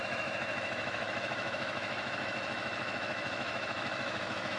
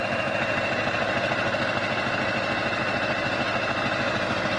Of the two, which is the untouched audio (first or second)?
second